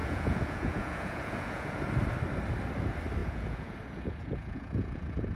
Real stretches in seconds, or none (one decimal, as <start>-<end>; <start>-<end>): 1.8-3.2